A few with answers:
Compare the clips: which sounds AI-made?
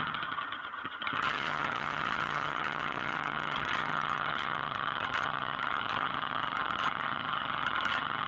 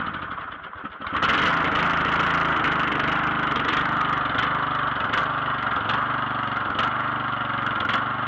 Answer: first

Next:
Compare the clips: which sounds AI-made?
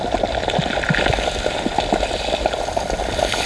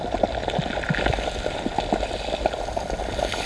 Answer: first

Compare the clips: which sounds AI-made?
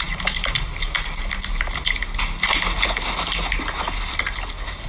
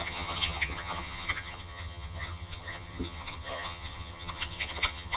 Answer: second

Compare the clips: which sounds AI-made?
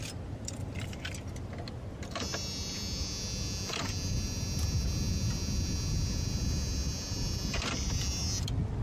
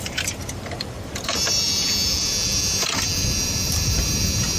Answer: second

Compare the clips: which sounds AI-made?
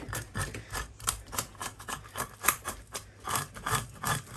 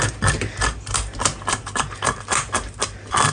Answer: first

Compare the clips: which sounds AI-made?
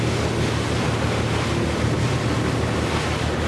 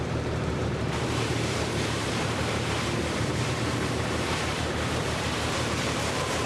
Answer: second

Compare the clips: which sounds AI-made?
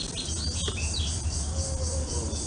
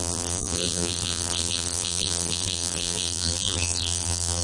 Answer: second